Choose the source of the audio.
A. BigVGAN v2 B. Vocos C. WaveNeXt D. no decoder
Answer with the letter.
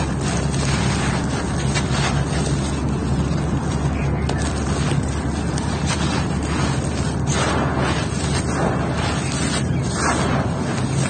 D